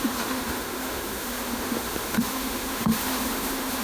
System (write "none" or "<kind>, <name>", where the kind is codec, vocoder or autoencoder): autoencoder, DAC-VAE